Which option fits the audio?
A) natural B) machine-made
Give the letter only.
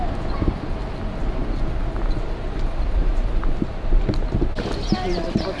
A